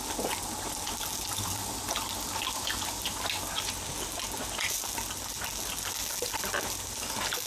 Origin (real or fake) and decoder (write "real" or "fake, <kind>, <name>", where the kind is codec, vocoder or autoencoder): real